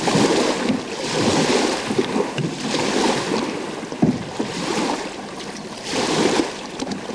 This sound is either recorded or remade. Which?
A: remade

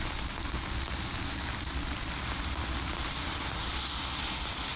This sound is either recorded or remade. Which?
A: recorded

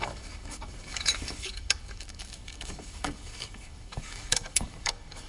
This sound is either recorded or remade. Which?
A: remade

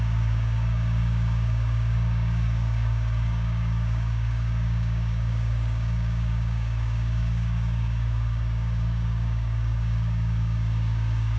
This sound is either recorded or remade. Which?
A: remade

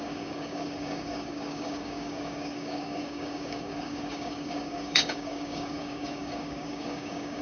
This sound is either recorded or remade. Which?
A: remade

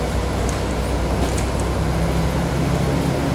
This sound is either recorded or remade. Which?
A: recorded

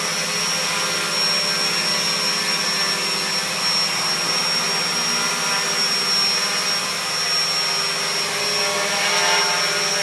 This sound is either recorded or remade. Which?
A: recorded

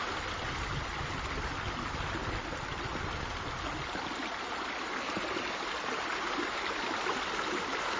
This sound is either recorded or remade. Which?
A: recorded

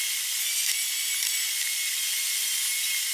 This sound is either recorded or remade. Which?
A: recorded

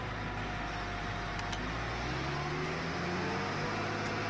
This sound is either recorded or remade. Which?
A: recorded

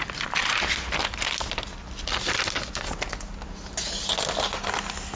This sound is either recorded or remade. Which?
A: recorded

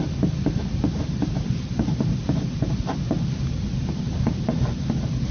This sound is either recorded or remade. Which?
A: recorded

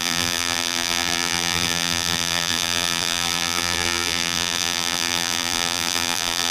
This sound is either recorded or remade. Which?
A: remade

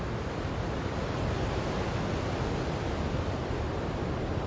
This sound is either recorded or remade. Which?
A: recorded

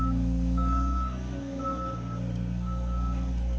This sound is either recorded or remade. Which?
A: remade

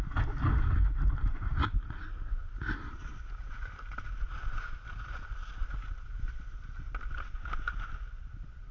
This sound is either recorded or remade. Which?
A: recorded